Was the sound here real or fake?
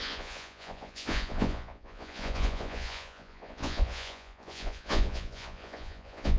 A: fake